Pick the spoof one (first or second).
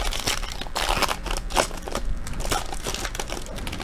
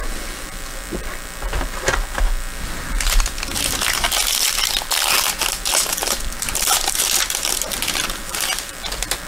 second